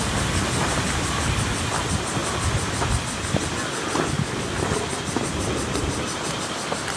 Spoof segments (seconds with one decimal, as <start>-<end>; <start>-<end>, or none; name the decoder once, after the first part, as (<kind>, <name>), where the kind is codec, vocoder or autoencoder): none

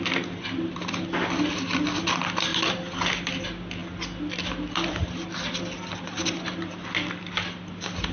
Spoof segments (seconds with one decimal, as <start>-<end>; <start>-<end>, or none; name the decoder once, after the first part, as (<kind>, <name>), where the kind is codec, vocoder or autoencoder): none

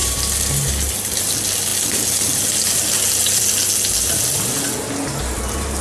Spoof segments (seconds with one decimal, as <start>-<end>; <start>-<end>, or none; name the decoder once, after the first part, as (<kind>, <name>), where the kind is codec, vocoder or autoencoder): 0.0-0.7 (vocoder, BigVGAN v2)

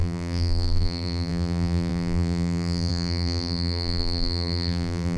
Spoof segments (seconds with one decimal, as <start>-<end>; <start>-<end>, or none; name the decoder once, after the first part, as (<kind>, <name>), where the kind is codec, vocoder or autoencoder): 0.0-5.2 (vocoder, BigVGAN v2)

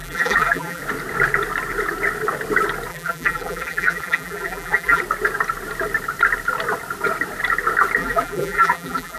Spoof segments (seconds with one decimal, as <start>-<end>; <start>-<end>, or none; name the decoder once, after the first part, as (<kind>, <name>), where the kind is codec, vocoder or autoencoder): 0.0-0.8 (vocoder, BigVGAN v2); 2.9-5.0; 8.0-9.2

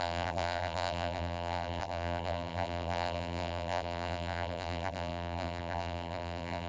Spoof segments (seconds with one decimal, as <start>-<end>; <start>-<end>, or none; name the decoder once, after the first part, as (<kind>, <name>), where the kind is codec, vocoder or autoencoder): 0.0-6.7 (vocoder, BigVGAN v2)

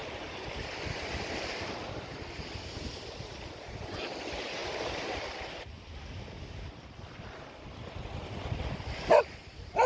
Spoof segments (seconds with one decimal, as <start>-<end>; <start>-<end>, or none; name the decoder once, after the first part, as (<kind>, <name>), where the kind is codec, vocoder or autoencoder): 0.0-1.7 (vocoder, BigVGAN v2); 4.6-9.2

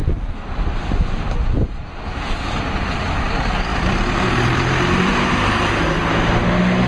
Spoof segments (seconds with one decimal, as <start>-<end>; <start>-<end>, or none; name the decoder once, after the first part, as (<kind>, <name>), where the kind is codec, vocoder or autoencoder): 0.0-0.6 (vocoder, BigVGAN v2); 3.7-5.5